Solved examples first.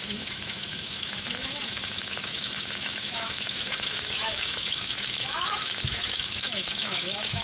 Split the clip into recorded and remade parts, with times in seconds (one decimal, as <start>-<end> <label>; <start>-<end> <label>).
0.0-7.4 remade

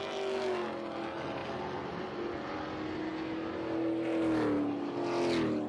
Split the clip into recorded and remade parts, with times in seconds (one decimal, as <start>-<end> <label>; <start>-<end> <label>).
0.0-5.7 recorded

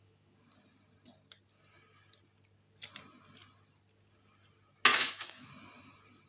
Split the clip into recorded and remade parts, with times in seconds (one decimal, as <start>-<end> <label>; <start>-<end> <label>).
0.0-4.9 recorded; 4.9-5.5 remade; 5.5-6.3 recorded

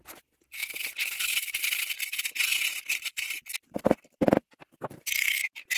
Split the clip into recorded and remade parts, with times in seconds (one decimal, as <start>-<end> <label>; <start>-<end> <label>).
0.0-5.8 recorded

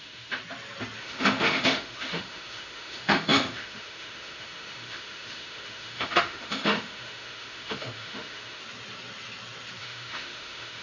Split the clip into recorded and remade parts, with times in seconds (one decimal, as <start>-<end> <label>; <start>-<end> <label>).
0.0-0.4 remade; 0.4-1.0 recorded; 1.0-8.6 remade; 8.6-9.8 recorded; 9.8-10.8 remade